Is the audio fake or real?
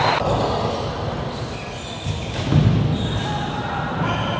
real